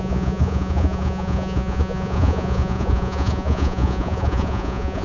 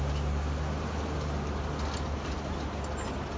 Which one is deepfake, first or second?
first